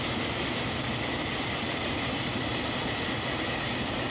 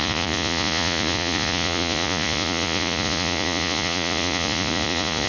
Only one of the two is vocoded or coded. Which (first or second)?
second